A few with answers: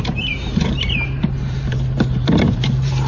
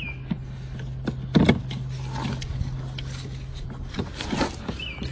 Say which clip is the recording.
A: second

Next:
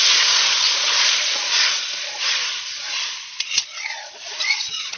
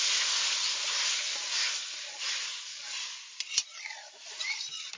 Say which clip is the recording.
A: second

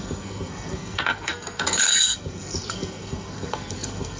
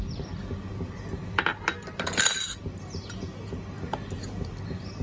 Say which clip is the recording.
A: second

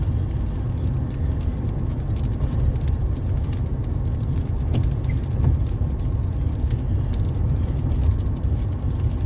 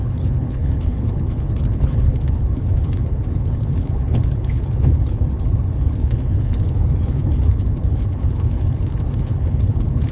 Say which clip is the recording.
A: first